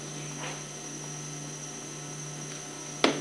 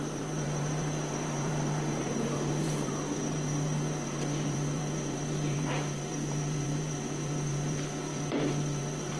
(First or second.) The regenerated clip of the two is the second